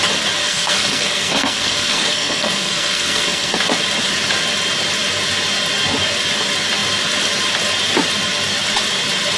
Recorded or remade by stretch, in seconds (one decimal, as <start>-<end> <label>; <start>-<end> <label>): 0.0-0.4 recorded; 0.4-3.6 remade; 3.6-9.4 recorded